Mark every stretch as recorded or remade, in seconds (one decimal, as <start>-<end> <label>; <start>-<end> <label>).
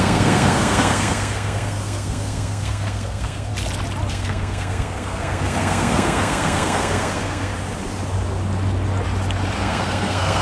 0.0-3.5 remade; 3.5-4.1 recorded; 4.1-7.5 remade; 7.5-9.6 recorded; 9.6-10.4 remade